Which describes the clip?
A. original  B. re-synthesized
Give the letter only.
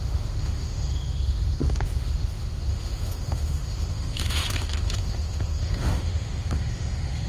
B